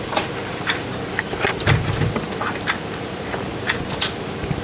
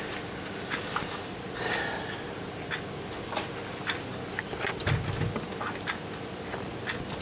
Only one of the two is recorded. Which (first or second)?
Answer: second